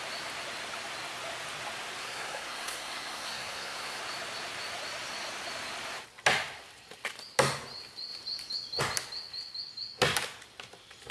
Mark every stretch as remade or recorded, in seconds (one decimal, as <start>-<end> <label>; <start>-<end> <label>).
0.0-2.0 recorded; 2.0-4.0 remade; 4.0-11.1 recorded